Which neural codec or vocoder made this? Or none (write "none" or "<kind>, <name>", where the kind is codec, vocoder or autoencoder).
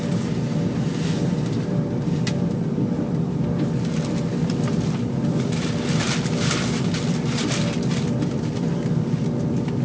none